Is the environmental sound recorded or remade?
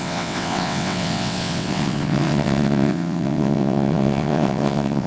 remade